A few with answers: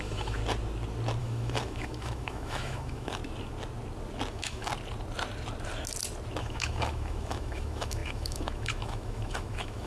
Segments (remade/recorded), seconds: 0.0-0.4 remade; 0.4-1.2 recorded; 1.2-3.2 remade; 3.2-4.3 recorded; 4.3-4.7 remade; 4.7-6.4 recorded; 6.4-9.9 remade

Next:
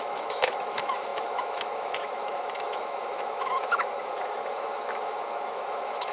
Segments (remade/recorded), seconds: 0.0-6.1 remade

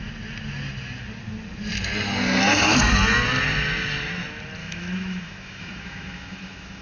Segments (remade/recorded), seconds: 0.0-4.6 recorded; 4.6-6.8 remade

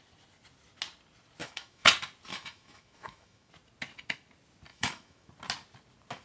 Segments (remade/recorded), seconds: 0.0-1.4 recorded; 1.4-1.9 remade; 1.9-2.3 recorded; 2.3-3.5 remade; 3.5-4.7 recorded; 4.7-5.3 remade; 5.3-6.2 recorded

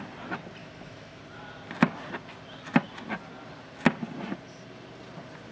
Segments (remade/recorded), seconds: 0.0-0.6 recorded; 0.6-1.2 remade; 1.2-5.5 recorded

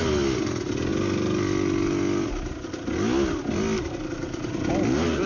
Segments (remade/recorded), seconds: 0.0-5.3 recorded

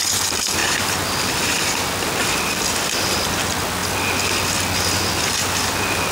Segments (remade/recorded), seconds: 0.0-6.1 recorded

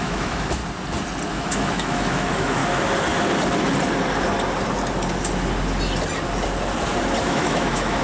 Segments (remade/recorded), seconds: 0.0-0.6 remade; 0.6-1.3 recorded; 1.3-2.6 remade; 2.6-7.2 recorded; 7.2-8.0 remade